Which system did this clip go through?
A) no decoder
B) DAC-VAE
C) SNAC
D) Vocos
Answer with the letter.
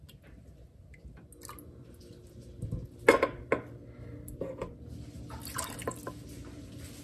A